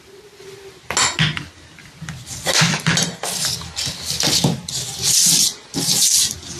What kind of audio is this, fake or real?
real